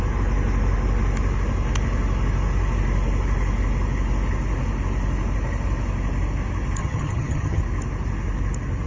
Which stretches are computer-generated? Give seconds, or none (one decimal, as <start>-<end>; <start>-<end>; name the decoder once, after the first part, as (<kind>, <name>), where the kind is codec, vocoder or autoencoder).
6.8-7.6 (vocoder, HiFi-GAN)